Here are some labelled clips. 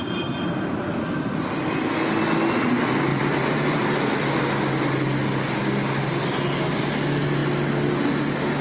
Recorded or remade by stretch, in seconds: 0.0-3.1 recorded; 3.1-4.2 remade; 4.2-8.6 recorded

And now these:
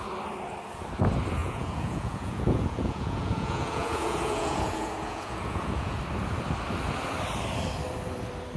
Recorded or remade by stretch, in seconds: 0.0-1.4 recorded; 1.4-6.0 remade; 6.0-8.6 recorded

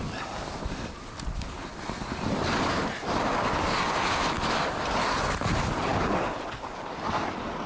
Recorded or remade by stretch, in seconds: 0.0-7.7 recorded